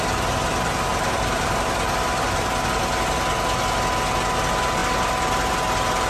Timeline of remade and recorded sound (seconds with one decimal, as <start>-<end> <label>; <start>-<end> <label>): 0.0-0.9 recorded; 0.9-2.8 remade; 2.8-4.8 recorded; 4.8-5.5 remade; 5.5-6.1 recorded